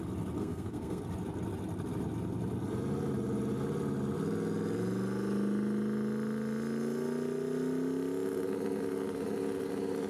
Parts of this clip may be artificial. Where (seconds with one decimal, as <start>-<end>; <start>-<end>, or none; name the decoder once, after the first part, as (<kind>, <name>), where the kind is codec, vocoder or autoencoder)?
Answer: 0.4-1.0 (codec, SNAC)